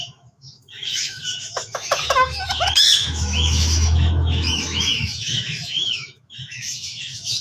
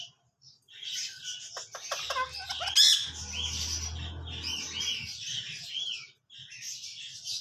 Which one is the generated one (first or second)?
first